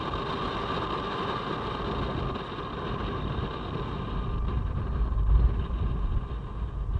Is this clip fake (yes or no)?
no